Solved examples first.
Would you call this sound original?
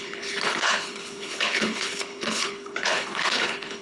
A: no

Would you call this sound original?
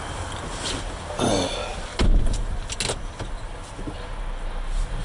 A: yes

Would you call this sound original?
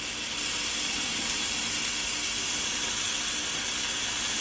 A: yes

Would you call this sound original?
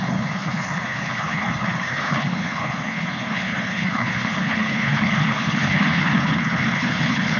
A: no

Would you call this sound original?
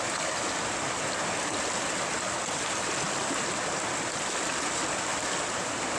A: yes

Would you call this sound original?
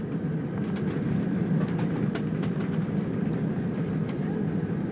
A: yes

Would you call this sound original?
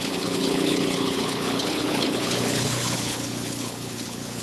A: no